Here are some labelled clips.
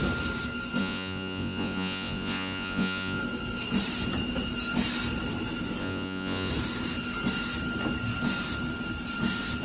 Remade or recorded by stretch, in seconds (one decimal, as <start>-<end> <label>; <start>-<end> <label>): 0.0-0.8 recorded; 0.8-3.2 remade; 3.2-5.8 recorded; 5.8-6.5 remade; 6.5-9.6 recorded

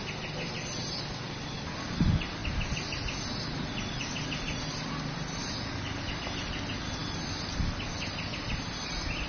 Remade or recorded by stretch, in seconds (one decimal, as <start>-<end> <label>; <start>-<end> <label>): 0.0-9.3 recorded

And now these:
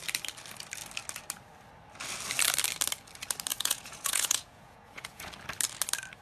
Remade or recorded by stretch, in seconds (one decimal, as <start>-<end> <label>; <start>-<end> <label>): 0.0-3.5 recorded; 3.5-5.3 remade; 5.3-6.2 recorded

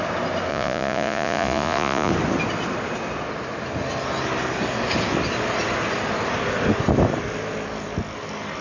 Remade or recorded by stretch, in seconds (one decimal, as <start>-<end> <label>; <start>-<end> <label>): 0.0-0.5 recorded; 0.5-2.1 remade; 2.1-8.6 recorded

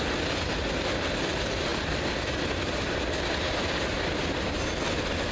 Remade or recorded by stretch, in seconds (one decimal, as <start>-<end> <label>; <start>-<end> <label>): 0.0-5.3 recorded

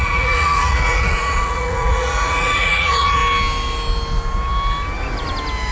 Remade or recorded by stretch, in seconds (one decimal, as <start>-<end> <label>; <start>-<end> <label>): 0.0-3.2 remade; 3.2-5.7 recorded

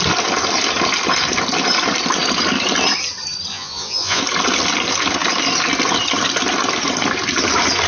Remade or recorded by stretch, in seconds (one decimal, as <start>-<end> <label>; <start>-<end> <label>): 0.0-3.5 recorded; 3.5-4.2 remade; 4.2-7.9 recorded